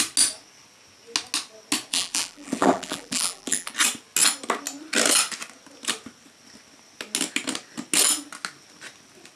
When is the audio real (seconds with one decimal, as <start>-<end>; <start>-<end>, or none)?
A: 0.0-1.9; 3.7-9.4